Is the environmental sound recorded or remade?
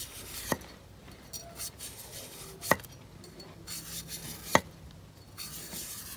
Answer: recorded